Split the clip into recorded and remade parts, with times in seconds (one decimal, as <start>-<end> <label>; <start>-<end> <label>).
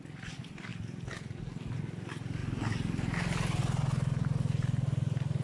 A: 0.0-5.4 recorded